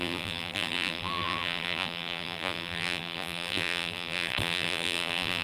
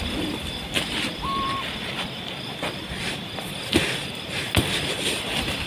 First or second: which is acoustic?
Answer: second